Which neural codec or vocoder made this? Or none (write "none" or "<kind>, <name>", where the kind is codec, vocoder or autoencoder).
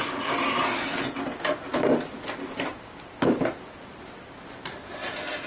none